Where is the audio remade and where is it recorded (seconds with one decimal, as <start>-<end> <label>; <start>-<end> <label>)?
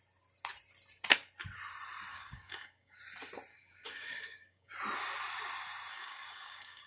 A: 0.0-2.1 recorded; 2.1-3.0 remade; 3.0-3.5 recorded; 3.5-4.7 remade; 4.7-5.9 recorded; 5.9-6.9 remade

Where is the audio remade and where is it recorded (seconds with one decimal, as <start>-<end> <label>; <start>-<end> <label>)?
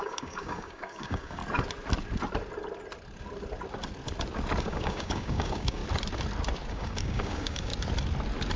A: 0.0-1.4 remade; 1.4-4.6 recorded; 4.6-5.8 remade; 5.8-6.7 recorded; 6.7-7.7 remade; 7.7-8.6 recorded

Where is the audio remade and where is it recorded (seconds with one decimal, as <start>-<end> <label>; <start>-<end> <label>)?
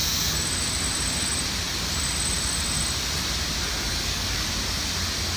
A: 0.0-3.9 recorded; 3.9-4.5 remade; 4.5-5.4 recorded